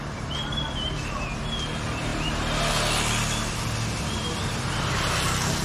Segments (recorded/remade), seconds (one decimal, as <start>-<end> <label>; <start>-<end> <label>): 0.0-5.6 recorded